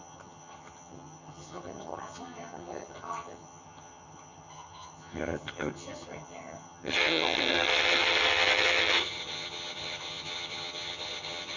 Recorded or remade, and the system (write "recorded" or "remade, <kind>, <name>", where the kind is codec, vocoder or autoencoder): remade, vocoder, HiFi-GAN